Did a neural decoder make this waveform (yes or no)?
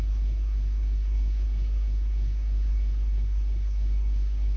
yes